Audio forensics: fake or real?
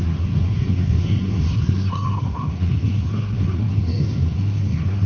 fake